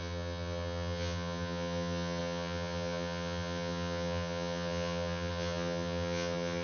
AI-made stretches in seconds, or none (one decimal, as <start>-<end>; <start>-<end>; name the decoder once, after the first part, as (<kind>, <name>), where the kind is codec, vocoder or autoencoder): 0.0-6.6 (vocoder, HiFi-GAN)